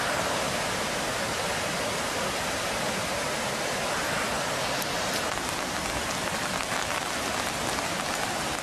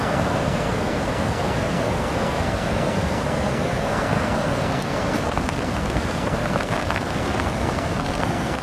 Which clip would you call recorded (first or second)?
first